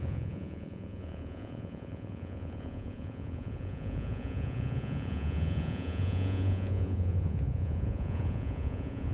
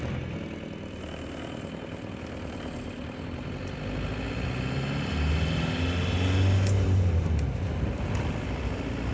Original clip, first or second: second